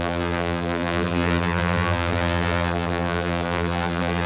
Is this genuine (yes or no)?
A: no